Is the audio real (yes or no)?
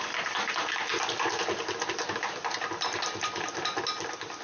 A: yes